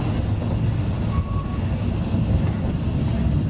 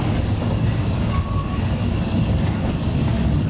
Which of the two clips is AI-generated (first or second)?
second